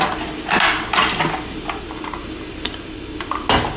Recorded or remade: recorded